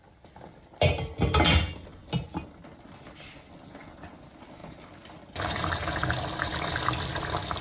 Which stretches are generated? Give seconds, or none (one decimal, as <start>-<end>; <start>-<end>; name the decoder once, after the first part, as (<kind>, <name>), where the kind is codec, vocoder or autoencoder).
4.6-5.7 (vocoder, BigVGAN v2)